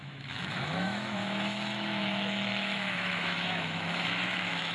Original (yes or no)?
no